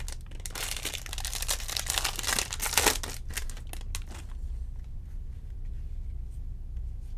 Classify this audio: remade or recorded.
recorded